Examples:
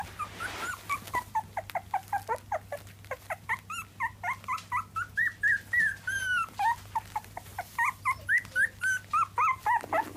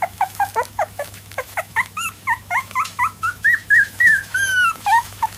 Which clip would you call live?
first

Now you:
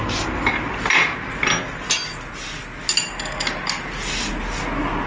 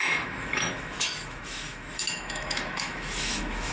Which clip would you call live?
first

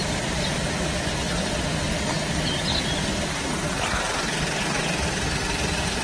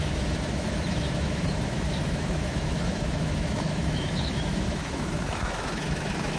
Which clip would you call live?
first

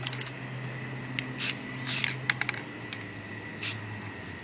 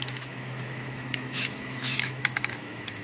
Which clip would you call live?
first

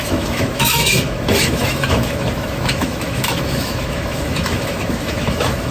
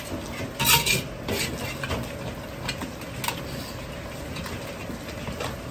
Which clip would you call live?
second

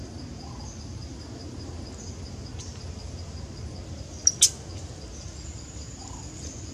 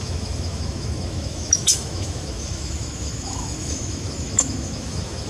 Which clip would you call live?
first